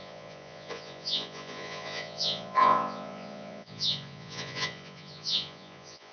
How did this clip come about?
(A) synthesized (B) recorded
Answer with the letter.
A